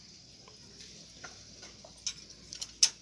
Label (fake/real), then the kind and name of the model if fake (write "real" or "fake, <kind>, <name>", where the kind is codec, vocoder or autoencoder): real